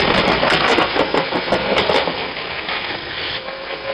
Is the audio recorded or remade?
remade